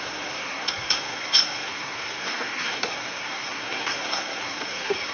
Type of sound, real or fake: fake